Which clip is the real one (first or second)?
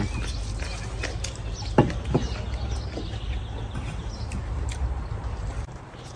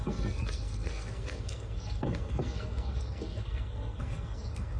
first